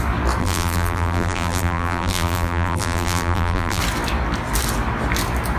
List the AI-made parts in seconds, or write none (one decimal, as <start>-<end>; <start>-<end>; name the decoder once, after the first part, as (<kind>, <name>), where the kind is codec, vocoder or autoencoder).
0.4-3.8 (vocoder, BigVGAN v2)